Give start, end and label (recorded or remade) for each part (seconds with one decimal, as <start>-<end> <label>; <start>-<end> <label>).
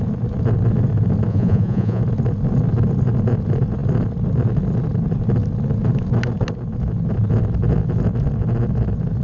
0.0-1.3 recorded; 1.3-2.0 remade; 2.0-9.2 recorded